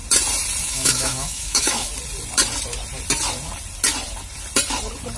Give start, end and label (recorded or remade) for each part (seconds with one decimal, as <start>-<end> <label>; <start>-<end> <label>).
0.0-0.6 recorded; 0.6-1.9 remade; 1.9-5.2 recorded